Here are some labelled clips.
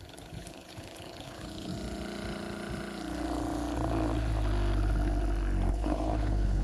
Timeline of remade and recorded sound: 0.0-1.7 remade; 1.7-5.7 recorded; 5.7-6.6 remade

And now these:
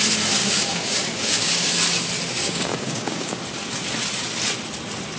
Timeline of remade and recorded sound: 0.0-0.4 recorded; 0.4-1.7 remade; 1.7-2.4 recorded; 2.4-3.4 remade; 3.4-5.2 recorded